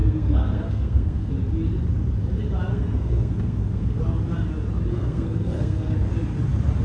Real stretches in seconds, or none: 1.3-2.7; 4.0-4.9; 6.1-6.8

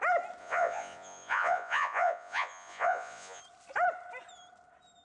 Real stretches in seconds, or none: 0.0-0.4; 3.4-5.0

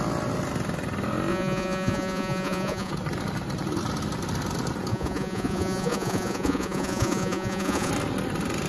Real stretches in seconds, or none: 0.0-1.3; 2.9-4.9; 7.9-8.7

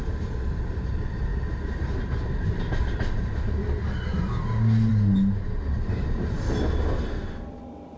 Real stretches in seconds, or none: 0.0-8.0